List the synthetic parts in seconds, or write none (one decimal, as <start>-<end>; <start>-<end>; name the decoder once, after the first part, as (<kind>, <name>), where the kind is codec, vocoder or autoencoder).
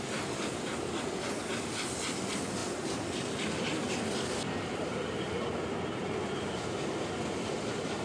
none